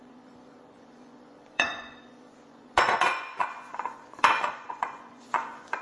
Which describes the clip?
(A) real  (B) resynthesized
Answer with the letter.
B